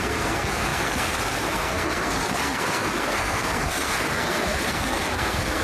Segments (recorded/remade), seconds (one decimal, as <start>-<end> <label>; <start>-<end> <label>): 0.0-5.6 remade